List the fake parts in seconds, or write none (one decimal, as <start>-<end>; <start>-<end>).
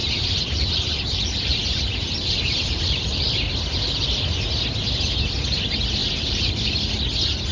0.0-3.4; 6.0-6.5